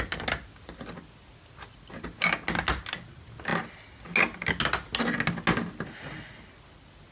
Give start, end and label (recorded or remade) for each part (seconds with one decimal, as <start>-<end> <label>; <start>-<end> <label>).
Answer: 0.0-7.1 recorded